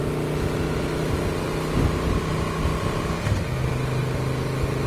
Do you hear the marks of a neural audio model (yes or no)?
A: no